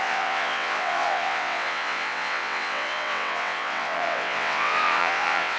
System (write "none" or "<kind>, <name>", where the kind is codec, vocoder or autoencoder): vocoder, WaveNeXt